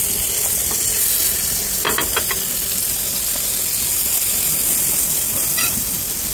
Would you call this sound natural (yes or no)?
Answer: yes